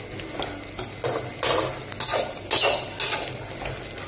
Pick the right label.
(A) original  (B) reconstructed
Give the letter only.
A